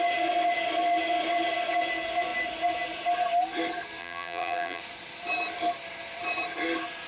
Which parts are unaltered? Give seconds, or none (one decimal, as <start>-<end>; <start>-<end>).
0.0-4.0; 4.8-7.1